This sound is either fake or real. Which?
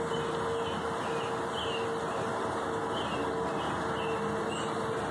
real